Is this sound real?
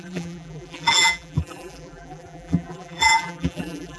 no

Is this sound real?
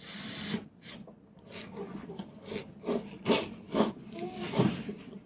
yes